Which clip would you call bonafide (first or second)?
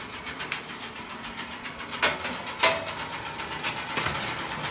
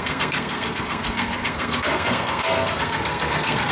first